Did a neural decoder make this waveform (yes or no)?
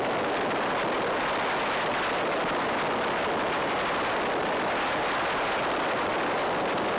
no